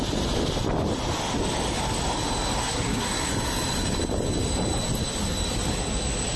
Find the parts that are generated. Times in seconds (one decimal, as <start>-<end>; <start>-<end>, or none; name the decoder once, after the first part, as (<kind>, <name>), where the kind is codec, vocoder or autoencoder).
2.6-3.3 (codec, SNAC)